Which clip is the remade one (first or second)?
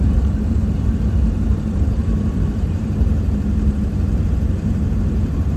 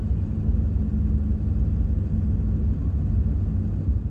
first